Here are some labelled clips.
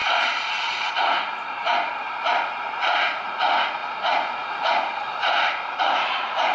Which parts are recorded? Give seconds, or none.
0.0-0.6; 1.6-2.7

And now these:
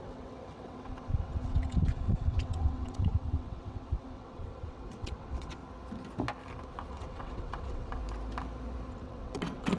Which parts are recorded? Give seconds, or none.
5.6-6.9; 8.0-8.9